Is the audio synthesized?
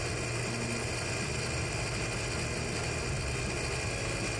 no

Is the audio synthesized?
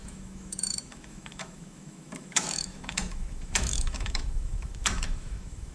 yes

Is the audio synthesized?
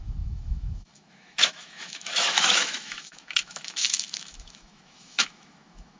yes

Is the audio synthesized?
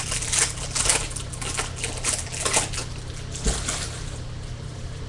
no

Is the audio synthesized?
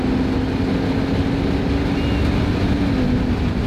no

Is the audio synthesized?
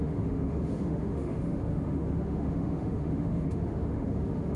yes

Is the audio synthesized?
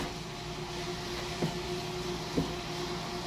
no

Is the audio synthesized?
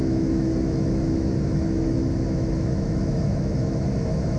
yes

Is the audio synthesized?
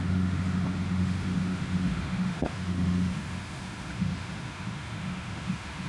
yes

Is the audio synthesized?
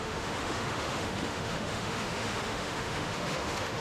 yes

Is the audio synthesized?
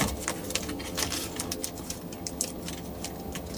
no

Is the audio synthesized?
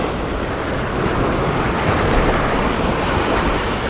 no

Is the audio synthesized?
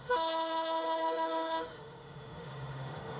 yes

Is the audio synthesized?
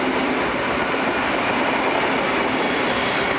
no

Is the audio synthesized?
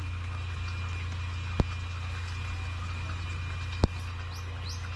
no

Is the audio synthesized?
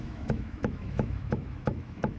yes